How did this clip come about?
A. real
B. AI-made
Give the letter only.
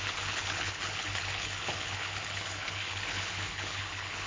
B